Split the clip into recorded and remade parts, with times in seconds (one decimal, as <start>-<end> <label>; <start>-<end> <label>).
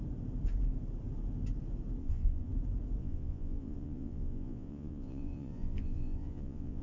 0.0-2.0 recorded; 2.0-2.5 remade; 2.5-3.0 recorded; 3.0-6.8 remade